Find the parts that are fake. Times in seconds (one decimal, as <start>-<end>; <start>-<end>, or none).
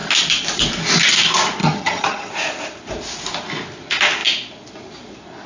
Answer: 1.6-2.3